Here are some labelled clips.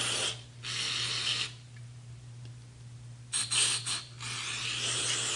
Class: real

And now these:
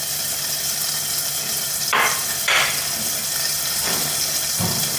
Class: fake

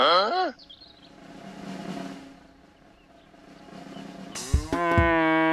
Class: real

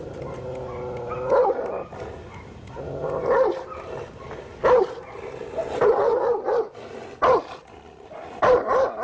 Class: real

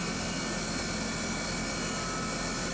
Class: real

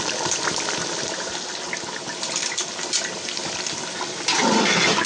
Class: fake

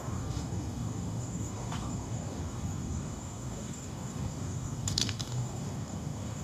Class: fake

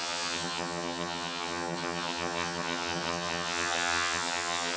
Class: fake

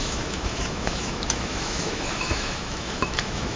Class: fake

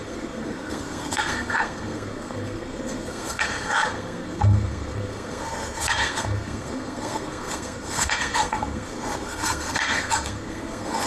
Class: fake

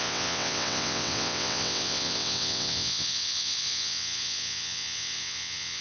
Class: fake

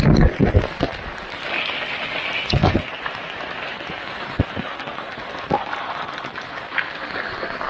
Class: real